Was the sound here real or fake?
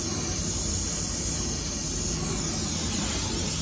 real